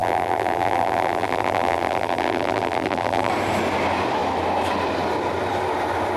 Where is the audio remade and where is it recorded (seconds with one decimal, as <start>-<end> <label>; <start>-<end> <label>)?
0.0-3.3 remade; 3.3-6.2 recorded